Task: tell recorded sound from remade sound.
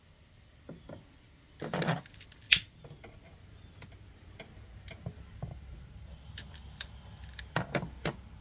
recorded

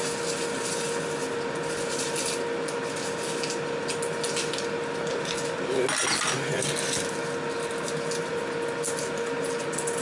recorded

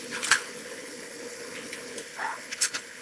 remade